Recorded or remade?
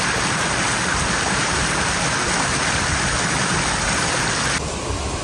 recorded